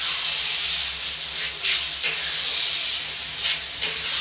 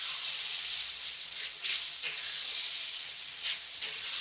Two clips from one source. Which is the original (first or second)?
first